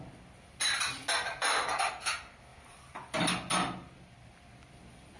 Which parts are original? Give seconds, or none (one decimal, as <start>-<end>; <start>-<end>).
0.0-1.4; 1.9-2.5; 3.3-5.2